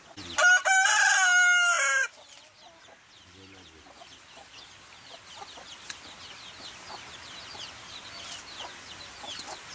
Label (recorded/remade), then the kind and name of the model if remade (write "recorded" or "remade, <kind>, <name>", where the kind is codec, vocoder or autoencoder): recorded